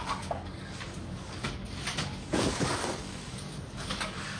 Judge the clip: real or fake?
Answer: fake